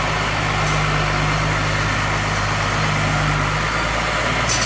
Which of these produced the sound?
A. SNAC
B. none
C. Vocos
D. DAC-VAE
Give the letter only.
B